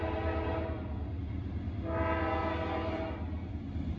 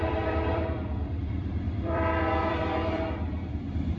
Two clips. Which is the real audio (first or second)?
first